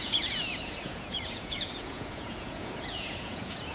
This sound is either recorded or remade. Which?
remade